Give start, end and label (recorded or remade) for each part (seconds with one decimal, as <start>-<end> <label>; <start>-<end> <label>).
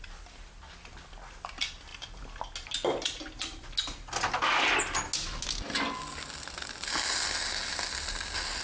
0.0-8.6 recorded